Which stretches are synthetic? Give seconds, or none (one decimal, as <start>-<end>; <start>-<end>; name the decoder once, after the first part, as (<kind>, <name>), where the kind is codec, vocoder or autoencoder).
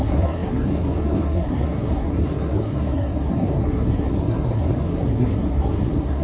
0.0-6.2 (codec, SNAC)